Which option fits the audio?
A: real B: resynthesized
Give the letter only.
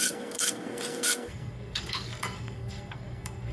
B